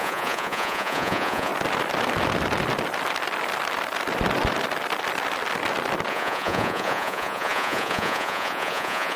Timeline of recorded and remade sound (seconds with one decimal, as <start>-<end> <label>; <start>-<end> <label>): 0.0-1.5 remade; 1.5-6.1 recorded; 6.1-9.2 remade

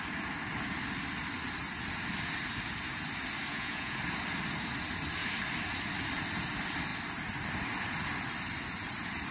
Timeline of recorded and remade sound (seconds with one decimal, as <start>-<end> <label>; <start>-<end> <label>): 0.0-3.5 recorded; 3.5-4.0 remade; 4.0-9.3 recorded

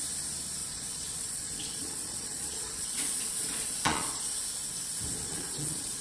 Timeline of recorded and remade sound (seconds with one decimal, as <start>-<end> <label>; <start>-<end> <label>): 0.0-0.6 recorded; 0.6-4.2 remade; 4.2-5.2 recorded; 5.2-6.0 remade

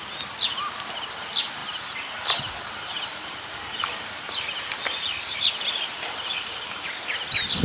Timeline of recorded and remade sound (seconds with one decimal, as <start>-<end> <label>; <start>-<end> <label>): 0.0-7.6 recorded